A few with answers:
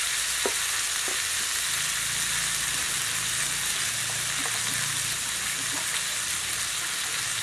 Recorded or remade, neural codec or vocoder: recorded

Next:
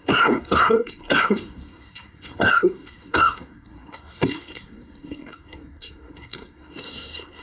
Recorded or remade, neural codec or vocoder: remade, codec, SNAC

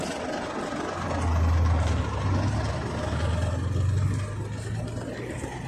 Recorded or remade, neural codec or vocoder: recorded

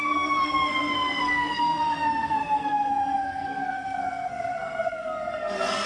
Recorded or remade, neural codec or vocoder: remade, codec, SNAC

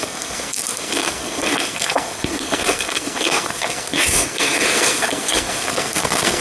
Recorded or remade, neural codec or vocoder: remade, codec, SNAC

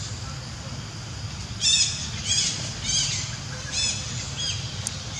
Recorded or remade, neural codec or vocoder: recorded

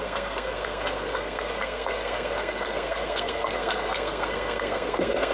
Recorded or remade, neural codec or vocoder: remade, codec, SNAC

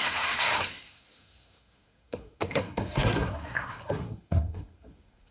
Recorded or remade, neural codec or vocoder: remade, codec, SNAC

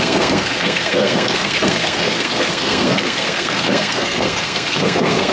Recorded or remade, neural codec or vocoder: remade, codec, SNAC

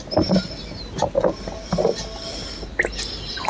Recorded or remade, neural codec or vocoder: recorded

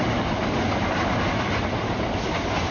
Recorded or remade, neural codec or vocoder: recorded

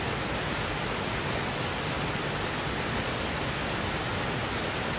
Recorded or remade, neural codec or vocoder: recorded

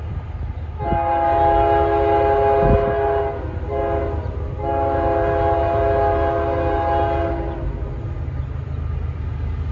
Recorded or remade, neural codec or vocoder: recorded